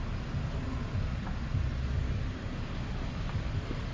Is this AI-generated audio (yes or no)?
no